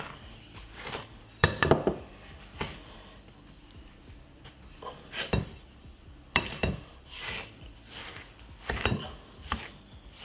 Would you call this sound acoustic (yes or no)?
no